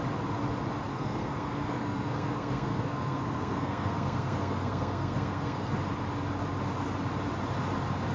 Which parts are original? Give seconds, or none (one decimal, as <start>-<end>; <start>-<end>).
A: 0.0-0.9; 5.7-8.1